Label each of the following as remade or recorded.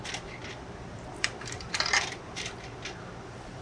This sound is remade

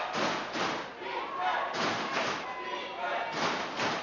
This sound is recorded